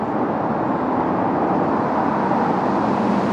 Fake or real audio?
real